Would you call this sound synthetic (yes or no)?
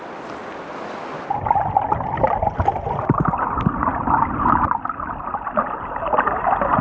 no